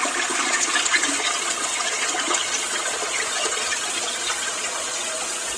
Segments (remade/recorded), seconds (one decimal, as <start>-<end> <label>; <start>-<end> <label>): 0.0-5.6 remade